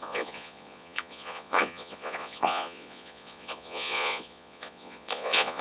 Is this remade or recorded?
remade